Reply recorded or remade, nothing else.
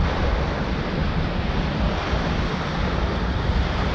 remade